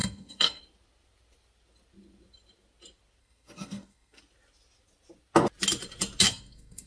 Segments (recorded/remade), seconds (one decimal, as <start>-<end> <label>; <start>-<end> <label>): 0.0-0.6 remade; 0.6-3.2 recorded; 3.2-4.2 remade; 4.2-6.3 recorded; 6.3-6.9 remade